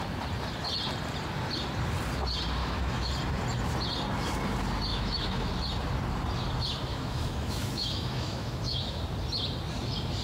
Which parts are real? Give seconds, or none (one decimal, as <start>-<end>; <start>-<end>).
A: 0.0-2.6; 3.1-4.9; 5.5-6.9; 9.0-10.2